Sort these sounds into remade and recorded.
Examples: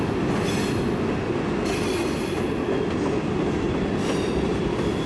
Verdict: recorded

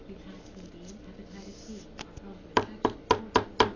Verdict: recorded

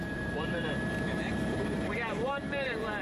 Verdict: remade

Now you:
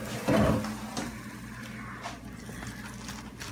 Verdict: recorded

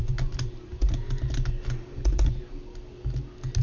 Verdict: recorded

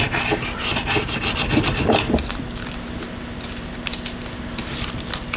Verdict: recorded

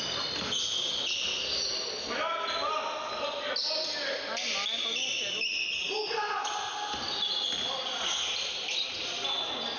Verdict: recorded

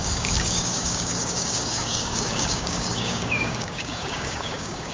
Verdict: remade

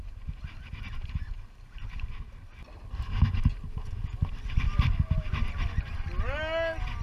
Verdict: recorded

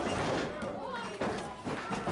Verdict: recorded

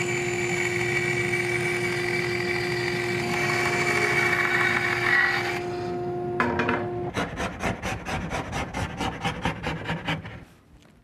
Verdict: recorded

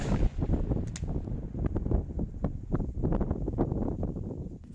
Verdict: recorded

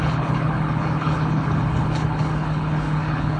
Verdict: remade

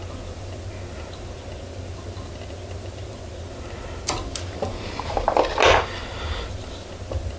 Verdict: recorded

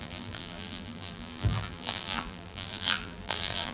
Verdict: remade